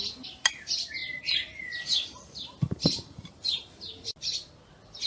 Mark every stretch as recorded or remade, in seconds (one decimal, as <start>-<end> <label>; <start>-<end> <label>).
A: 0.0-1.0 recorded; 1.0-4.1 remade; 4.1-5.1 recorded